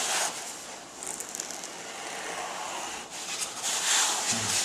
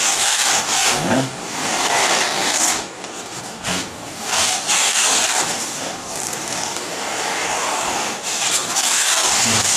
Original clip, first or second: first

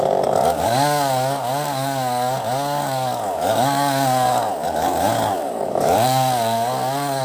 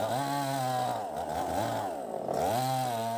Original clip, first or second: second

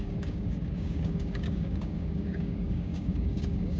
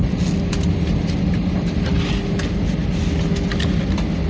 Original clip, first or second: second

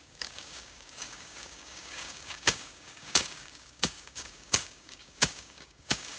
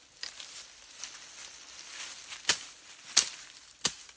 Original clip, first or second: second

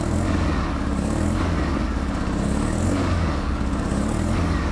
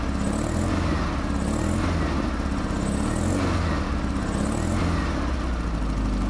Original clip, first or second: second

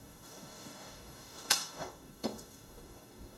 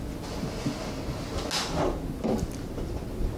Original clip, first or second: second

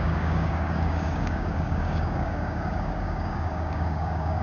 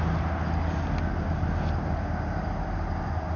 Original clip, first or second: second